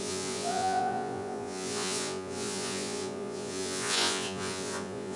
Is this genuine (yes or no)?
no